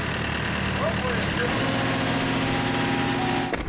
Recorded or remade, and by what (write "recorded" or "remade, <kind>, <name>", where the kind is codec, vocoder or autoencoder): recorded